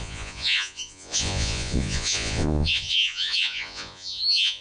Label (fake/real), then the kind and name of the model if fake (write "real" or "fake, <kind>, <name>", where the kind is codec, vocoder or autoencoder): fake, vocoder, Vocos